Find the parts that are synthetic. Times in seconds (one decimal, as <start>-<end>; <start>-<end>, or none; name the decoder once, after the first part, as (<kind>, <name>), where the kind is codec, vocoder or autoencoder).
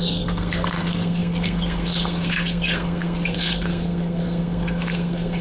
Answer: 0.0-5.4 (codec, SNAC)